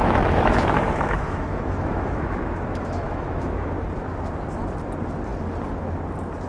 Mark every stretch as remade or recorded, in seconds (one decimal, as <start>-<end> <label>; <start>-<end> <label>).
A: 0.0-3.7 remade; 3.7-6.5 recorded